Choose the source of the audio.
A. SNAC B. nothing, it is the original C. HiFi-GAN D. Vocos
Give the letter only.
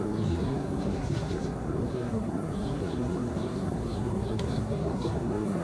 A